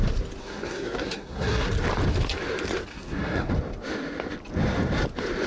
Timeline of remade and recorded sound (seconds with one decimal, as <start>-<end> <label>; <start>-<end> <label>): 0.0-0.4 recorded; 0.4-1.7 remade; 1.7-2.9 recorded; 2.9-3.5 remade; 3.5-5.5 recorded